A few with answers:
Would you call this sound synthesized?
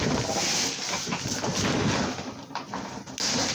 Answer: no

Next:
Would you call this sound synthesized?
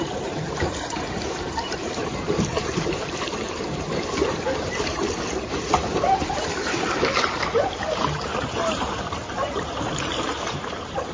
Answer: yes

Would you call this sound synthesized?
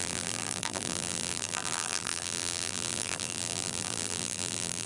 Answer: yes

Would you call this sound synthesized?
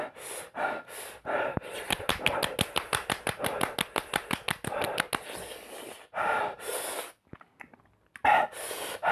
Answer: no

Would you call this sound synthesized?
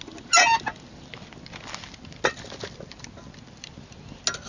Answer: no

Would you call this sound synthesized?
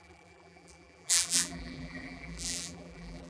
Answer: yes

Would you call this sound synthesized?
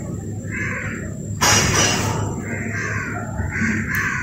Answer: no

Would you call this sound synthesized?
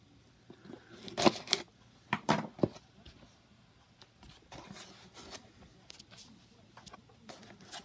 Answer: no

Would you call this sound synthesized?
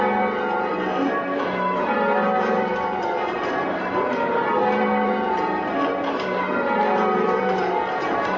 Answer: yes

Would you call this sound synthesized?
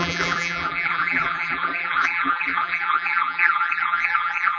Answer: yes